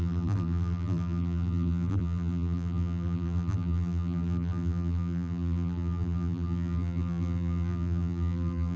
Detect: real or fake fake